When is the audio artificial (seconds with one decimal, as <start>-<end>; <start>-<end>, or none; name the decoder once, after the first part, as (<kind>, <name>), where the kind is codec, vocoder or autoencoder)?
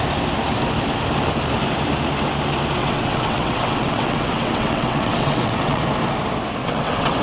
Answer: 2.8-5.8 (vocoder, WaveNeXt); 6.6-7.2